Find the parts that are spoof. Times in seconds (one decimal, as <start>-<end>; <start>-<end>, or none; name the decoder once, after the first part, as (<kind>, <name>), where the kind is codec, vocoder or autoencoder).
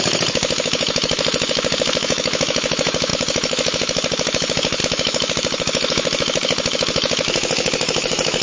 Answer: 0.0-8.4 (autoencoder, DAC-VAE)